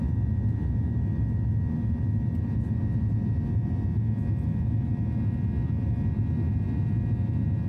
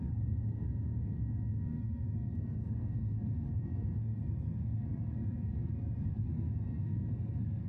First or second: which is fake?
second